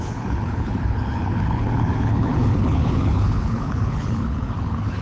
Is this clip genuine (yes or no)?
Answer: no